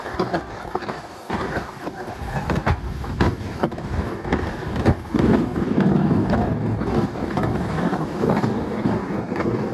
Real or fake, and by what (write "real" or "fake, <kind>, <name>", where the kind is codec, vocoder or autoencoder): fake, codec, DAC